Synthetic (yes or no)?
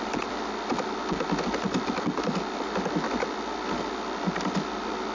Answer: no